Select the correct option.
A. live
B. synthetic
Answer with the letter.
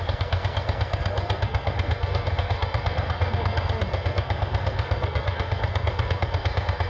B